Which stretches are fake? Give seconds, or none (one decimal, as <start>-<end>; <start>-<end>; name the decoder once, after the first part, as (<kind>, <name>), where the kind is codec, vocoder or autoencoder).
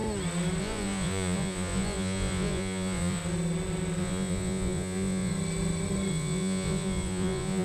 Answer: 0.6-3.2 (vocoder, Vocos); 4.0-5.3; 6.1-7.6